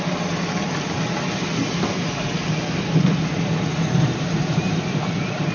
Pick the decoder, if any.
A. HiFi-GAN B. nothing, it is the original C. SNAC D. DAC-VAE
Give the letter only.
B